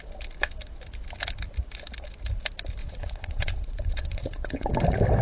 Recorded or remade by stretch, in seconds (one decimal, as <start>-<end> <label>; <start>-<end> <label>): 0.0-2.8 recorded; 2.8-4.7 remade; 4.7-5.2 recorded